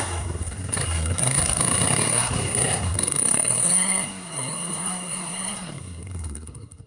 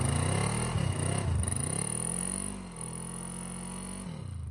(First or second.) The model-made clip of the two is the first